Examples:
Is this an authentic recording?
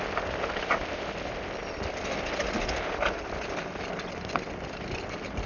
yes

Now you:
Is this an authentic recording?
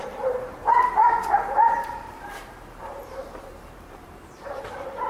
no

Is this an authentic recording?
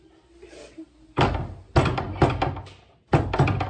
yes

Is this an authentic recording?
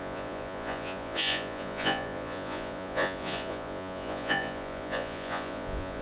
no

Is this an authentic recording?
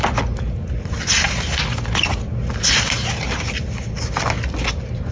yes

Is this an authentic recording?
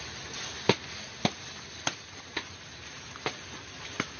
yes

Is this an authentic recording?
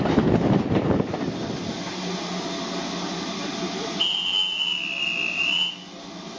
yes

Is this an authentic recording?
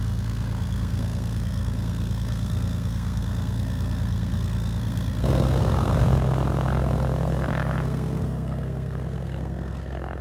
no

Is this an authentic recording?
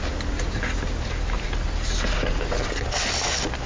yes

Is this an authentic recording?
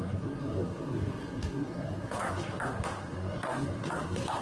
no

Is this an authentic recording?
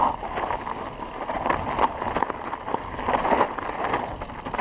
yes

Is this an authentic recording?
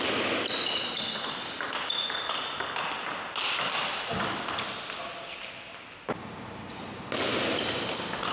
yes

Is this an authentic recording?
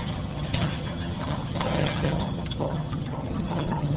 no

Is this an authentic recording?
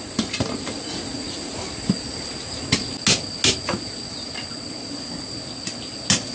yes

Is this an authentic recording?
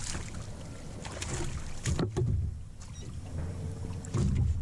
yes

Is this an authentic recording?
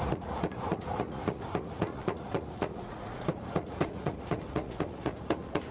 no